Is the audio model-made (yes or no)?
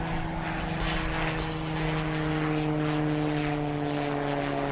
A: no